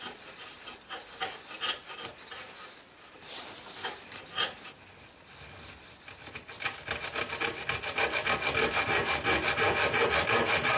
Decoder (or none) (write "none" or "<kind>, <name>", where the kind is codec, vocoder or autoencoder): none